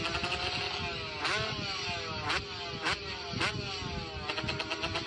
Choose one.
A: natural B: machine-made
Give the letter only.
A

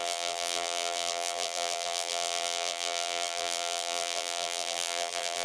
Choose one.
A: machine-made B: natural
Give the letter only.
A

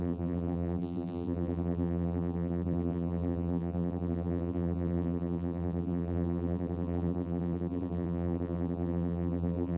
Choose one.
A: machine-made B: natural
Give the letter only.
A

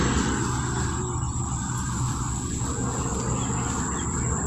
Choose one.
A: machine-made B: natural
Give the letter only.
B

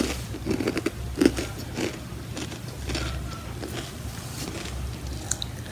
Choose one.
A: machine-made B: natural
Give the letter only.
B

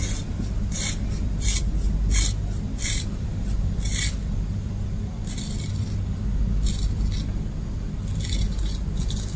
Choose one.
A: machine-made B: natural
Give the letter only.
A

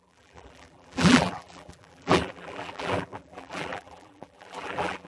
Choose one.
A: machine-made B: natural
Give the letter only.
A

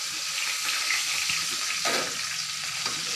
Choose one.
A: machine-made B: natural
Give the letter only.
B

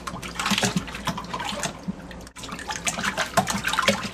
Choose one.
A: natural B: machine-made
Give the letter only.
B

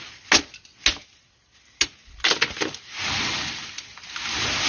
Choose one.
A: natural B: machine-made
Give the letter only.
A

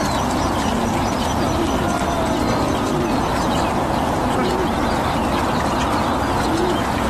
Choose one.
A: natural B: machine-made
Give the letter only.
A